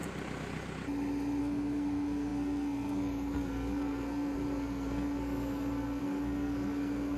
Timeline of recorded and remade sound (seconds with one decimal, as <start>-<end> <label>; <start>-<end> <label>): 0.0-1.4 recorded; 1.4-7.2 remade